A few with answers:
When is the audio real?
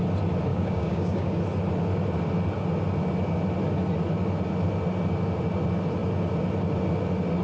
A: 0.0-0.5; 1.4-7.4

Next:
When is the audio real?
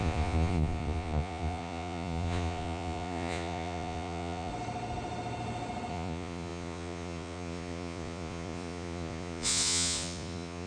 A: 4.5-5.9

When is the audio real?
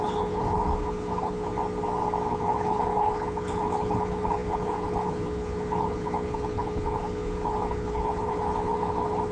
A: 1.5-2.3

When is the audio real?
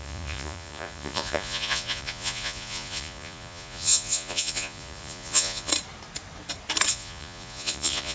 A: 5.7-6.9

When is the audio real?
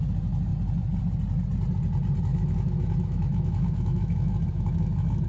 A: 0.0-2.3